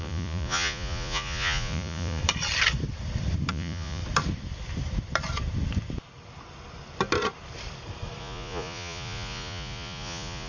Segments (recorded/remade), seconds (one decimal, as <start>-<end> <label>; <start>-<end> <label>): 0.0-2.2 remade; 2.2-3.5 recorded; 3.5-4.0 remade; 4.0-8.2 recorded; 8.2-10.5 remade